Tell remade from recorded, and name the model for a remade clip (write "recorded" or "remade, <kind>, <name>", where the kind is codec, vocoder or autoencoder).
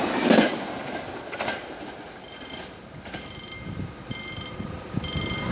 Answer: recorded